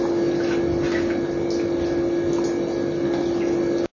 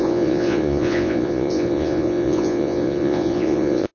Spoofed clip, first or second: second